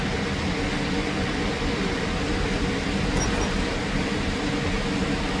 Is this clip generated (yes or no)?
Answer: no